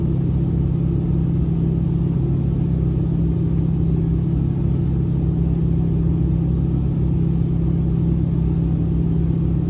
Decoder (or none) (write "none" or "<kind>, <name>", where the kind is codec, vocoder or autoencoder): none